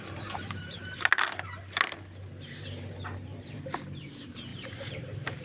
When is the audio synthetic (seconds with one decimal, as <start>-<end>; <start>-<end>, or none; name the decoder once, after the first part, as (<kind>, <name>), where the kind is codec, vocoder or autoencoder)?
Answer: 0.0-0.8 (vocoder, BigVGAN v2); 2.5-5.4